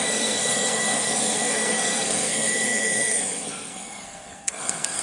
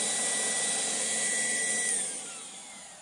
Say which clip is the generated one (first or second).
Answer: first